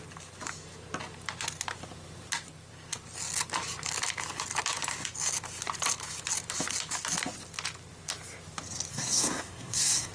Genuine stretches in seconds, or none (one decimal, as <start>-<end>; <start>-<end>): 0.0-8.9